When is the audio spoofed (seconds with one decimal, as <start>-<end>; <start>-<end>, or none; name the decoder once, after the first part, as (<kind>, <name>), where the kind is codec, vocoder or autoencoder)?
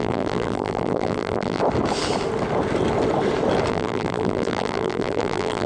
0.0-1.6 (vocoder, BigVGAN v2); 3.7-5.7